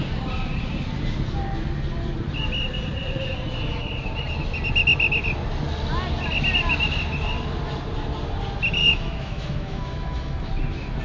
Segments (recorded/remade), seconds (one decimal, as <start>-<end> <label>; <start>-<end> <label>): 0.0-8.8 recorded; 8.8-10.5 remade; 10.5-11.0 recorded